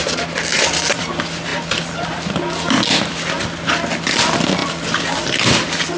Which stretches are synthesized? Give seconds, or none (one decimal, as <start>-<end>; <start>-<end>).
none